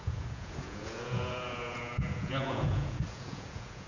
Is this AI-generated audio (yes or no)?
yes